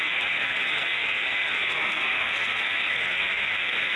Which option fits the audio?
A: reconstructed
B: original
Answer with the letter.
A